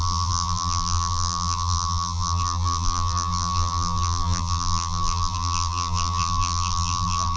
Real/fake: fake